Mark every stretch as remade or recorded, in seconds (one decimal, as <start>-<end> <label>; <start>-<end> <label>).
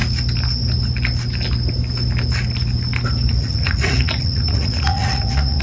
0.0-3.3 recorded; 3.3-5.6 remade